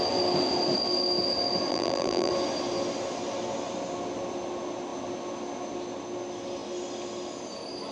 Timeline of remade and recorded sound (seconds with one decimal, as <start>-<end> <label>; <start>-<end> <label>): 0.0-1.7 recorded; 1.7-2.3 remade; 2.3-7.9 recorded